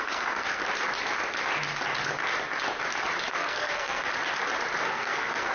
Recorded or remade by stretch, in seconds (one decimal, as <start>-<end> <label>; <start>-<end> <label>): 0.0-0.6 remade; 0.6-3.3 recorded; 3.3-4.1 remade; 4.1-4.8 recorded; 4.8-5.5 remade